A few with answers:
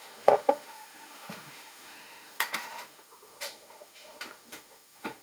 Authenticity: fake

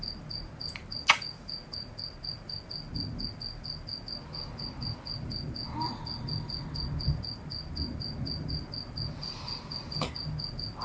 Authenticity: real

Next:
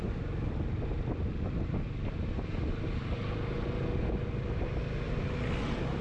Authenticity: real